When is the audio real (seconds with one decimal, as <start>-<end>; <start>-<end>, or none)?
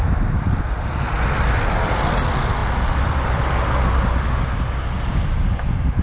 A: 0.0-6.0